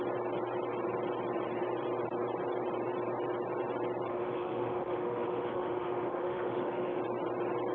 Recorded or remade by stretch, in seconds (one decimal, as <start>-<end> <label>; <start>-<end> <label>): 0.0-4.1 recorded; 4.1-7.0 remade; 7.0-7.7 recorded